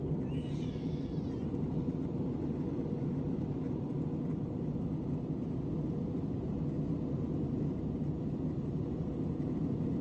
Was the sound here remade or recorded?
recorded